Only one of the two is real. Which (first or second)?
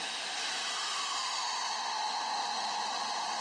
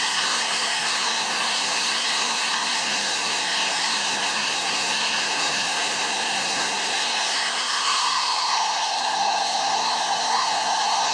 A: first